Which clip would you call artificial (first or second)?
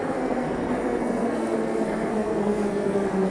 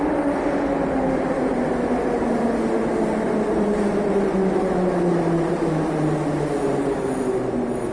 first